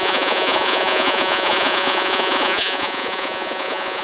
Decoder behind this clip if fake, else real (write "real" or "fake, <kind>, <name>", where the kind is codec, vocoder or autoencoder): fake, vocoder, Vocos